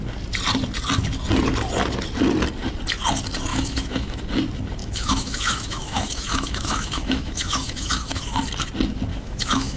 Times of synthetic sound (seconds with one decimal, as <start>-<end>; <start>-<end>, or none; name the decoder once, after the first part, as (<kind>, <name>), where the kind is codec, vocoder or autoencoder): 3.5-4.2 (autoencoder, DAC-VAE); 4.8-8.4; 9.1-9.8